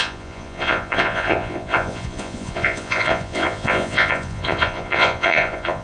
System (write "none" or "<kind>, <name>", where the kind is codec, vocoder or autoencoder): vocoder, Vocos